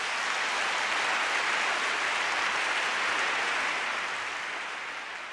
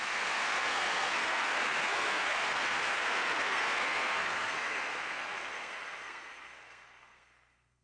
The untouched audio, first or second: first